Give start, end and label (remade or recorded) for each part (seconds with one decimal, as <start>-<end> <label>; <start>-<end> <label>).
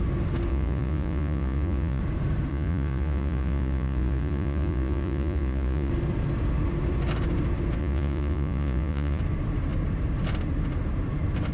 0.0-0.5 recorded; 0.5-2.0 remade; 2.0-2.5 recorded; 2.5-5.9 remade; 5.9-7.8 recorded; 7.8-9.2 remade; 9.2-11.5 recorded